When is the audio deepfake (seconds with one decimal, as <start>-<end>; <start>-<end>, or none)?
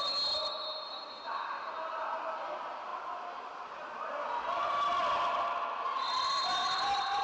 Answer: none